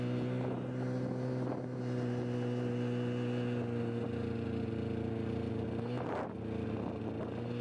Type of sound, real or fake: real